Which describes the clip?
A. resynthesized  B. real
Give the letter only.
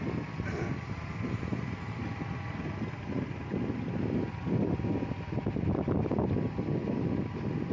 B